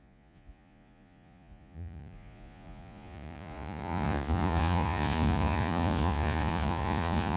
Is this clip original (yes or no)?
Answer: no